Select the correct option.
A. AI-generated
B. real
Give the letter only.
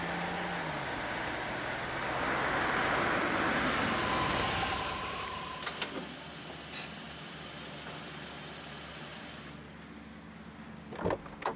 B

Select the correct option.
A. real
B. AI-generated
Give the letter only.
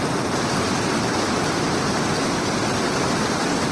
A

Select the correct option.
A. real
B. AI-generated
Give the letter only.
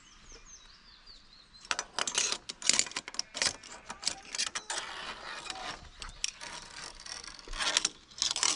A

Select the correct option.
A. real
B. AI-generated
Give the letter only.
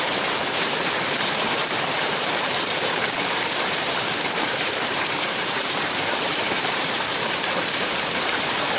B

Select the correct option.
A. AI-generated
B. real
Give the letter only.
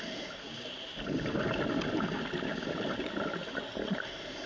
B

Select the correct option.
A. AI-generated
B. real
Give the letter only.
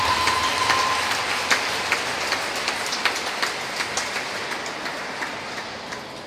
B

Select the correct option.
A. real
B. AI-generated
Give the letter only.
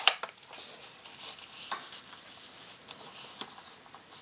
A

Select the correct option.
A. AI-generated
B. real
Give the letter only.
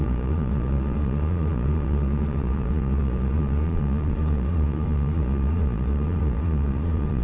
A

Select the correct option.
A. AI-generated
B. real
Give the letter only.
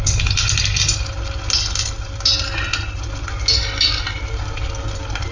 B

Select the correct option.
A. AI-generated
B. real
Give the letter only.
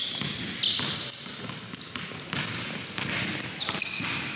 B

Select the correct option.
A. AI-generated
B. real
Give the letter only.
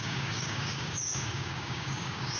A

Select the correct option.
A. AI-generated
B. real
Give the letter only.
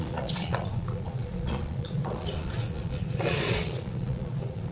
A